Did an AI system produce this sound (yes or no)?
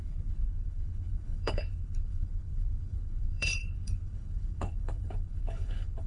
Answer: yes